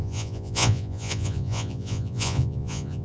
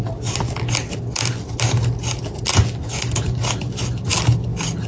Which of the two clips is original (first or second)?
second